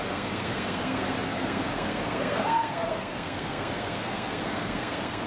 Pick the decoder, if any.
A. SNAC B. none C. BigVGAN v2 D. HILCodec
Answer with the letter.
A